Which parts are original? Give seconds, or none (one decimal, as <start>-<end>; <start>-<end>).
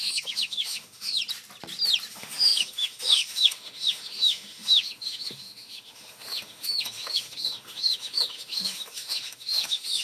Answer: 1.2-2.1